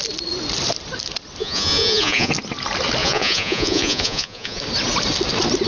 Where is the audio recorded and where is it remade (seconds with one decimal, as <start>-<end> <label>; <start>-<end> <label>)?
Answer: 0.0-1.4 recorded; 1.4-2.3 remade; 2.3-3.0 recorded; 3.0-4.6 remade; 4.6-5.7 recorded